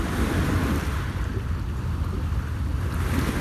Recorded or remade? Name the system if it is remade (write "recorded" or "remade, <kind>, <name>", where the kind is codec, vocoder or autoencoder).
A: recorded